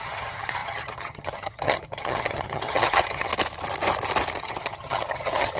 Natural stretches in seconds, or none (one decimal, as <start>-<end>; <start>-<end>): 3.3-4.4